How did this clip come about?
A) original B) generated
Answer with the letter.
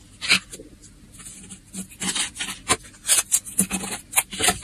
A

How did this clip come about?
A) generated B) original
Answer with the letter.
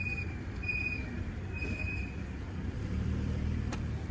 A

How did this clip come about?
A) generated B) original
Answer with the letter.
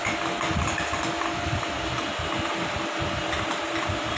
B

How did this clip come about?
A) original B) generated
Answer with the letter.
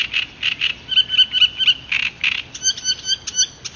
A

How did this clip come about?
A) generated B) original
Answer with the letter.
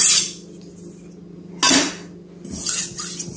B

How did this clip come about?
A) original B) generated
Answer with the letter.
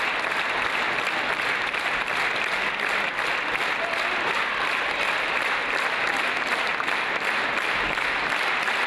B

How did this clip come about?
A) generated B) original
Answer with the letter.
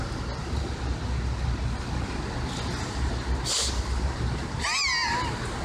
B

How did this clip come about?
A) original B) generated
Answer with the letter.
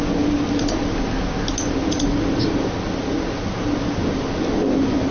A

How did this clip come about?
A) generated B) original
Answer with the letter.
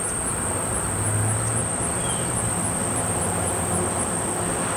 B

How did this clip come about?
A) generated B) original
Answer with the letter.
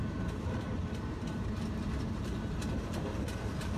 A